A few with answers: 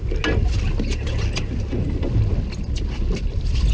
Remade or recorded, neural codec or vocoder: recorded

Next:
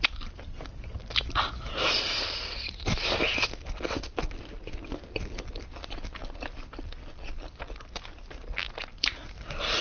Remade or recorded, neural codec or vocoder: recorded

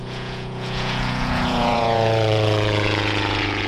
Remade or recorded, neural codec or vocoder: remade, vocoder, Vocos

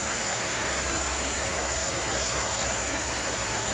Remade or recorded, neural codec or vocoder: remade, codec, SNAC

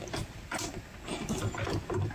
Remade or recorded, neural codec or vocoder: recorded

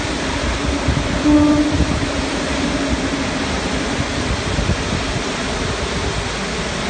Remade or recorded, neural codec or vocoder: recorded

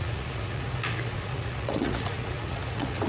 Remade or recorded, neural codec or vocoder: remade, vocoder, Vocos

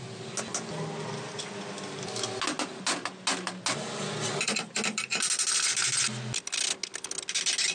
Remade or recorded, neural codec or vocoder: recorded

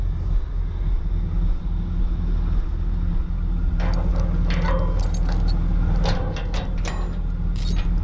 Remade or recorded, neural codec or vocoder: recorded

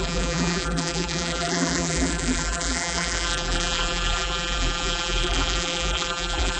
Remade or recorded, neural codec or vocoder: remade, vocoder, BigVGAN v2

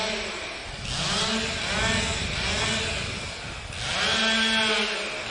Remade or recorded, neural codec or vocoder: recorded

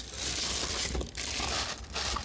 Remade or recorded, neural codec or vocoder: recorded